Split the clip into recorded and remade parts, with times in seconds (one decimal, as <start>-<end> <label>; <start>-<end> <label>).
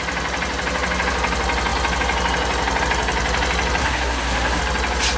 0.0-3.8 recorded; 3.8-4.6 remade; 4.6-5.2 recorded